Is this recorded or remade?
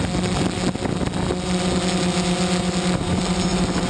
recorded